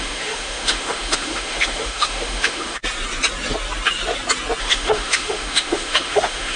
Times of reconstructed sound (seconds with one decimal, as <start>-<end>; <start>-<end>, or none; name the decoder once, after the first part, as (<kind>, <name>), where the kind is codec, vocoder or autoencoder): 0.0-2.8 (autoencoder, DAC-VAE); 4.6-6.6